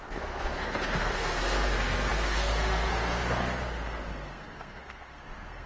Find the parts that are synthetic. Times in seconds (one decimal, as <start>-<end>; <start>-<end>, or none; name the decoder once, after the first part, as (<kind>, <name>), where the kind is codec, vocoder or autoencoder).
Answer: 0.0-5.7 (codec, SNAC)